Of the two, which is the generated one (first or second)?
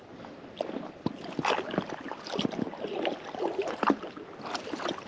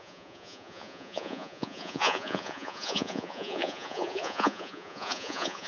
second